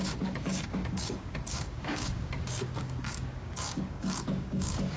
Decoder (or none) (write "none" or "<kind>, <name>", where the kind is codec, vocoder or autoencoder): codec, DAC